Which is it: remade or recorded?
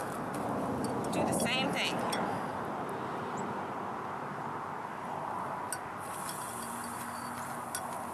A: recorded